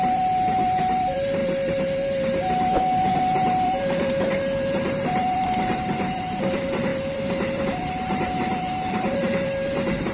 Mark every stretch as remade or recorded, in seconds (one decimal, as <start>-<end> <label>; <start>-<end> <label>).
0.0-10.1 remade